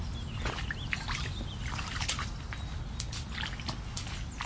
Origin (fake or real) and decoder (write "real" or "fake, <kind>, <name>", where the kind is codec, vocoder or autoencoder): real